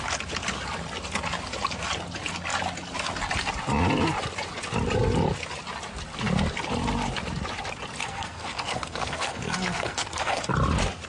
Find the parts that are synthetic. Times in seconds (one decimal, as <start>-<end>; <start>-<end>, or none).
8.0-10.4